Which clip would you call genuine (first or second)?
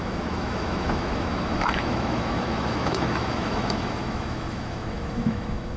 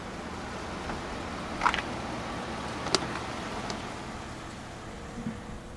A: second